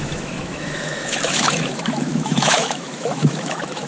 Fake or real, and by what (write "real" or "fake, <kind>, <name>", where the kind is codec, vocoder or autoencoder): fake, autoencoder, DAC-VAE